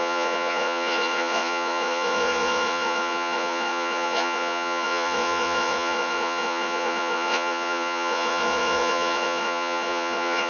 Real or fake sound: fake